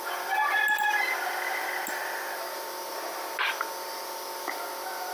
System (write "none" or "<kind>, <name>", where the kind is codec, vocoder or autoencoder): none